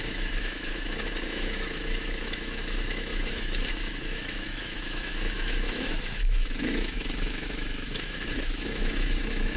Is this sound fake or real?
fake